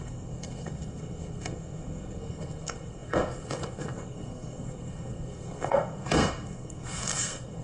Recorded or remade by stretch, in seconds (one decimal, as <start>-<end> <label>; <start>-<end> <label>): 0.0-7.6 remade